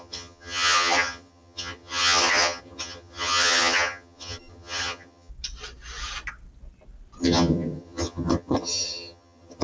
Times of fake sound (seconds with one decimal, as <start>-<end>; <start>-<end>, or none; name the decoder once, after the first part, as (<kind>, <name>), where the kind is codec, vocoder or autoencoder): 0.0-5.3 (vocoder, HiFi-GAN); 7.2-9.6